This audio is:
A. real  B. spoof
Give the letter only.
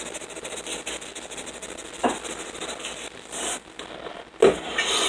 A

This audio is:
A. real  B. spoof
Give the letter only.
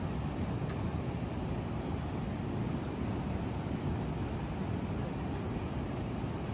A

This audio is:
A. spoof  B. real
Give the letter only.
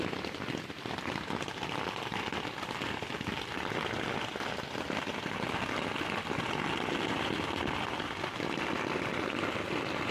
B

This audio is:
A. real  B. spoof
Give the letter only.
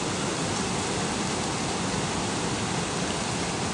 A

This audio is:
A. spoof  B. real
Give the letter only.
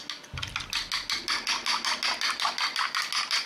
B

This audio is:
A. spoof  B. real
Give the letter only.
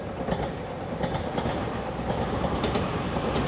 B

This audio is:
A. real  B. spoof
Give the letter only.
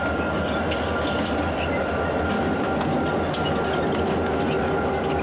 A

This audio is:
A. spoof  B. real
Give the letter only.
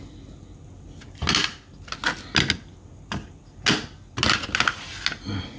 B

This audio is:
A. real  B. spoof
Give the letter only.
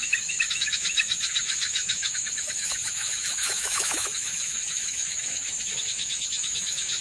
B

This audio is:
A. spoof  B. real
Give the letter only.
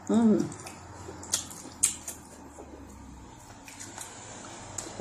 B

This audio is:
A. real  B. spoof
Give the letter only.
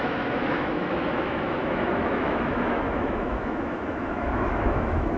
B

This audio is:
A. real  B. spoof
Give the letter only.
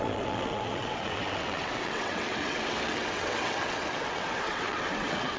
B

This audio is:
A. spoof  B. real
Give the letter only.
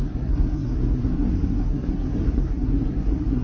A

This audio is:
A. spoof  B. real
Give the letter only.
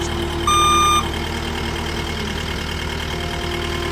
B